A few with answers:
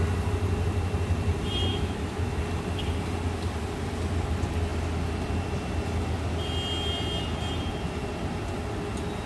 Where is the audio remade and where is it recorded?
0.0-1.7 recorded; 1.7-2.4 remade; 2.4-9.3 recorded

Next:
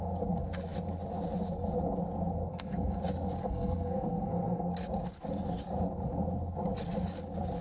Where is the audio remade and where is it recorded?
0.0-2.5 recorded; 2.5-3.0 remade; 3.0-3.4 recorded; 3.4-4.7 remade; 4.7-7.6 recorded

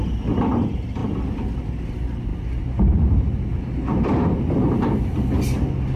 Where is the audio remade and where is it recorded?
0.0-6.0 recorded

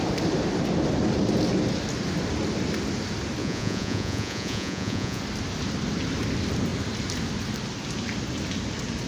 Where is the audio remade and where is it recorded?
0.0-3.4 recorded; 3.4-5.2 remade; 5.2-9.1 recorded

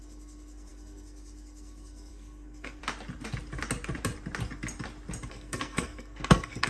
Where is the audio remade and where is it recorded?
0.0-2.8 remade; 2.8-5.3 recorded; 5.3-6.7 remade

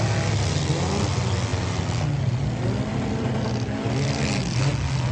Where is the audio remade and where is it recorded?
0.0-5.1 recorded

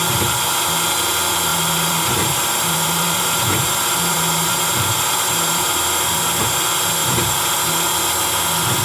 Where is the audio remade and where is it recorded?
0.0-1.5 recorded; 1.5-5.7 remade; 5.7-7.0 recorded; 7.0-7.7 remade; 7.7-8.8 recorded